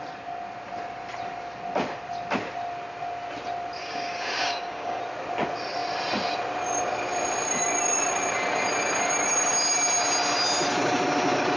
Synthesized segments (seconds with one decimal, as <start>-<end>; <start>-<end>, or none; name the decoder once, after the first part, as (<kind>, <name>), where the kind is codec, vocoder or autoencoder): 3.8-5.0 (codec, DAC)